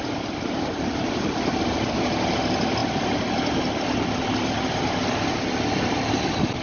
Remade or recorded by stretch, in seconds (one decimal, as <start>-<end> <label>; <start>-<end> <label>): 0.0-2.8 remade; 2.8-4.8 recorded; 4.8-6.6 remade